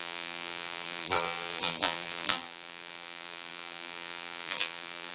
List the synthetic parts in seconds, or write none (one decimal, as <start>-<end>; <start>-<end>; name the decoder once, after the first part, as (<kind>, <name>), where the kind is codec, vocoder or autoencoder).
0.0-5.1 (vocoder, BigVGAN v2)